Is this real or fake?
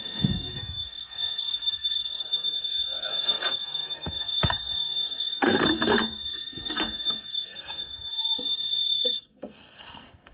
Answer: fake